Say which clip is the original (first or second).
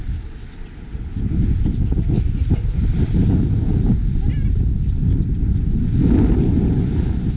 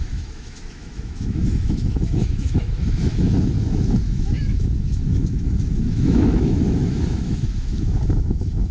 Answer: first